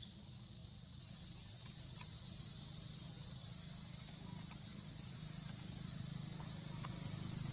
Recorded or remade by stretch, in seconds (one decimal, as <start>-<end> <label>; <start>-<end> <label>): 0.0-0.6 recorded; 0.6-4.9 remade; 4.9-7.5 recorded